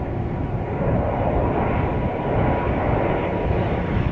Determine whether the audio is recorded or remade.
recorded